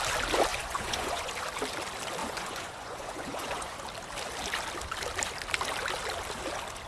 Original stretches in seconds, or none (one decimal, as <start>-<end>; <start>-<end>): 0.0-0.5; 1.3-2.2; 3.8-6.9